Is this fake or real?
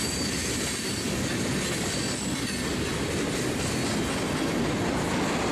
real